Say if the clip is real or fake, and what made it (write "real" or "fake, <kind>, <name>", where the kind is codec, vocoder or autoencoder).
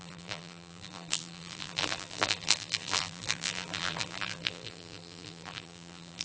fake, vocoder, BigVGAN v2